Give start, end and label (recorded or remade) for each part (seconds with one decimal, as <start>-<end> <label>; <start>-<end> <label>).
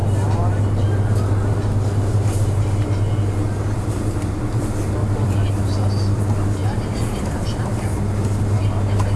0.0-5.0 recorded; 5.0-5.5 remade; 5.5-6.6 recorded; 6.6-7.4 remade; 7.4-9.2 recorded